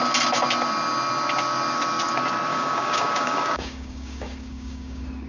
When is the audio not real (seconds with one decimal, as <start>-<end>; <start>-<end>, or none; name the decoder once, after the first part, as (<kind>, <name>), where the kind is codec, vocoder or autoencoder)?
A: 2.5-5.3 (codec, DAC)